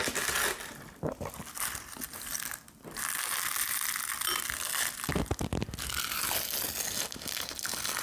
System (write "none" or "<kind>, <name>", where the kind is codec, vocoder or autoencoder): none